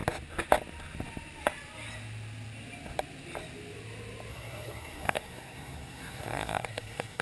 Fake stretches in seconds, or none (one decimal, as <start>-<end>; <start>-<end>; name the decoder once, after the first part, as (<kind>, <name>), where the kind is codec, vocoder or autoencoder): 4.3-7.2 (codec, SNAC)